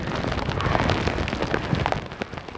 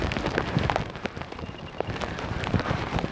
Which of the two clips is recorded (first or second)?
first